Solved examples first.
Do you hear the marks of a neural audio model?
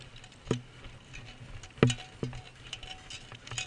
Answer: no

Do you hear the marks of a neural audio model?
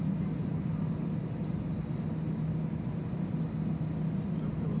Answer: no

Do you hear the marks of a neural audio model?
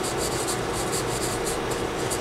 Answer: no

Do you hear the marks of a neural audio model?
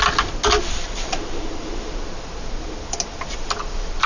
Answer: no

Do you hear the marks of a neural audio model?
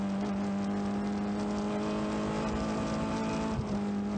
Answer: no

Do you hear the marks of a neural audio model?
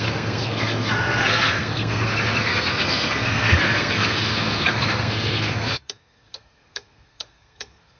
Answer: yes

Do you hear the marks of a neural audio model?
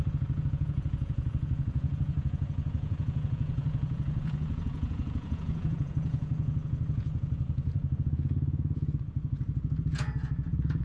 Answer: yes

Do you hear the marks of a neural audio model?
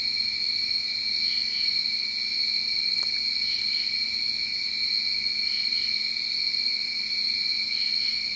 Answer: no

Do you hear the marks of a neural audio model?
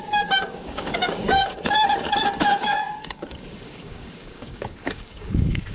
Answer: yes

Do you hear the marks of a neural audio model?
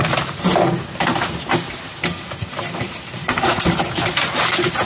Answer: no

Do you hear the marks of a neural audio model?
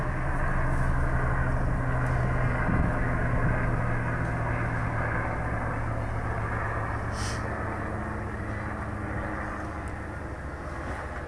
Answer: no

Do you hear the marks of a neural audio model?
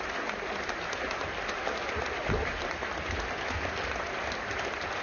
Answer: no